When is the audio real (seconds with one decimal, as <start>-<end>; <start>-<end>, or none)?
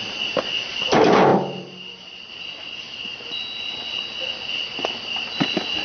0.0-5.8